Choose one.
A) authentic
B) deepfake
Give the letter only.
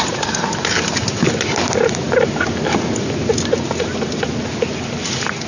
A